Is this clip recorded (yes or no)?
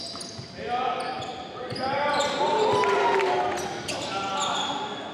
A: yes